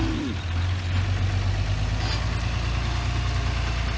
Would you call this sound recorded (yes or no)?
yes